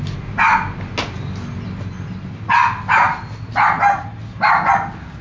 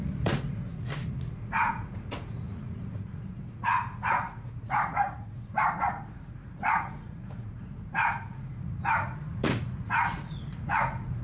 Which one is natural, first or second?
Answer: first